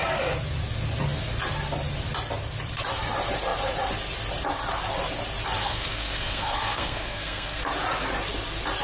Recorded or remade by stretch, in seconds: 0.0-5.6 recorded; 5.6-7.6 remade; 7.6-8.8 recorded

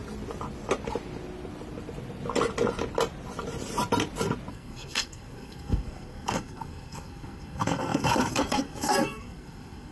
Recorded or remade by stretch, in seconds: 0.0-4.5 recorded; 4.5-9.9 remade

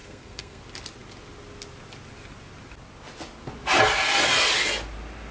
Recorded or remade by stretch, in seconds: 0.0-0.6 remade; 0.6-5.3 recorded

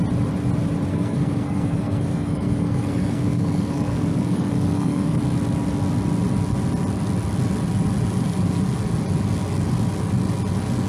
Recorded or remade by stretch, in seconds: 0.0-0.9 recorded; 0.9-5.2 remade; 5.2-10.9 recorded

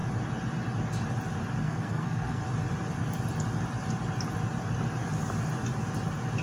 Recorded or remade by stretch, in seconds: 0.0-1.6 recorded; 1.6-2.4 remade; 2.4-6.4 recorded

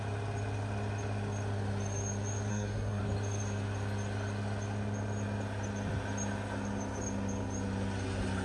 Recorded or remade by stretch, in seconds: 0.0-2.5 recorded; 2.5-3.0 remade; 3.0-8.4 recorded

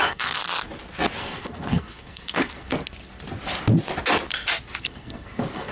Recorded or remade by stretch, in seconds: 0.0-0.4 remade; 0.4-1.2 recorded; 1.2-2.7 remade; 2.7-4.8 recorded; 4.8-5.7 remade